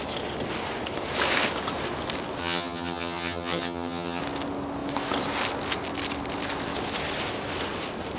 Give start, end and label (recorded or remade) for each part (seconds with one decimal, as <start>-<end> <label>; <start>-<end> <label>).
0.0-2.4 recorded; 2.4-4.2 remade; 4.2-8.2 recorded

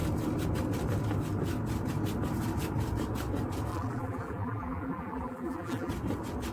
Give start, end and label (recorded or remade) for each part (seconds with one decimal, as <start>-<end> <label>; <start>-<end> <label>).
0.0-3.7 recorded; 3.7-5.9 remade; 5.9-6.5 recorded

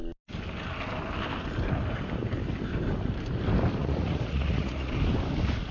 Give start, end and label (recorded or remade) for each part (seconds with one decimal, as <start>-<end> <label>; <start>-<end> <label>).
0.0-3.8 recorded; 3.8-4.9 remade; 4.9-5.7 recorded

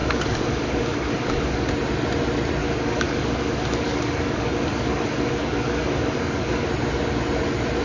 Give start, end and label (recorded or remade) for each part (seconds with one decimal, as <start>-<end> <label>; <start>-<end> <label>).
0.0-1.7 remade; 1.7-2.6 recorded; 2.6-6.7 remade; 6.7-7.8 recorded

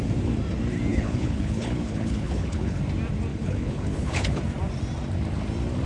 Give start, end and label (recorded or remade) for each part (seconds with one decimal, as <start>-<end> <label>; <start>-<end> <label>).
0.0-0.9 recorded; 0.9-2.8 remade; 2.8-3.3 recorded; 3.3-4.4 remade; 4.4-5.9 recorded

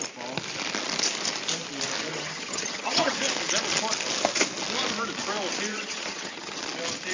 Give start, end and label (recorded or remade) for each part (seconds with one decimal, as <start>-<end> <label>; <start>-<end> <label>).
0.0-2.1 recorded; 2.1-3.2 remade; 3.2-5.7 recorded; 5.7-6.6 remade; 6.6-7.1 recorded

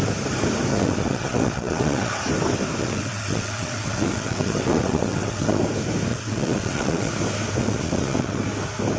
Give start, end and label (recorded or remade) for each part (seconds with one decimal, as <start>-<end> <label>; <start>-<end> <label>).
0.0-0.7 recorded; 0.7-2.2 remade; 2.2-2.8 recorded; 2.8-5.6 remade; 5.6-6.1 recorded; 6.1-7.1 remade; 7.1-7.6 recorded; 7.6-8.4 remade; 8.4-9.0 recorded